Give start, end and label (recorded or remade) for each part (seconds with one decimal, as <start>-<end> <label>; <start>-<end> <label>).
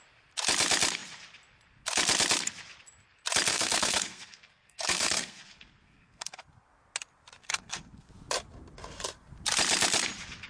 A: 0.0-3.5 recorded; 3.5-6.4 remade; 6.4-7.4 recorded; 7.4-8.1 remade; 8.1-10.5 recorded